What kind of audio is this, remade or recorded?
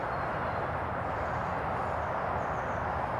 recorded